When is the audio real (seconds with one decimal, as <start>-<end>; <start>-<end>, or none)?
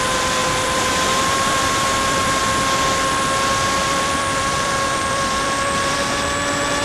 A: 0.0-0.4; 2.4-3.8; 6.0-6.8